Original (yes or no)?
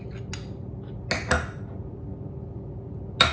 yes